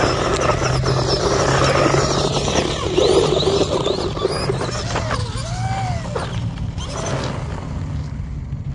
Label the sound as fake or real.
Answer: real